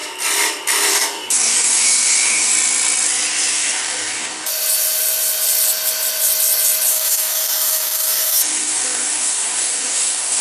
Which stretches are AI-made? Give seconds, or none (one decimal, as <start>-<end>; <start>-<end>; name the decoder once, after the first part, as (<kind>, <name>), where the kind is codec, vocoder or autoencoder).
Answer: 0.9-2.5 (codec, DAC); 3.5-4.5; 6.9-10.4